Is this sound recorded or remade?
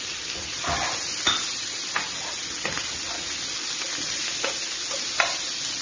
recorded